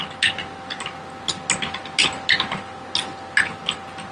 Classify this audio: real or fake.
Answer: real